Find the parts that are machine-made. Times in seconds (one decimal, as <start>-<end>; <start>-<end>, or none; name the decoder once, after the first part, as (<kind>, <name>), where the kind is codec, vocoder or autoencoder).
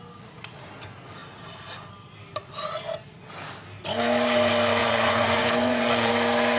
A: 4.8-6.1 (vocoder, Vocos)